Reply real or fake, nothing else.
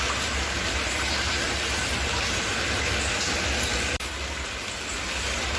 real